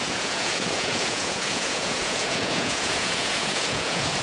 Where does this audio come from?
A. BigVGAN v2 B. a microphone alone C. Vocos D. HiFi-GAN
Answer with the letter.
C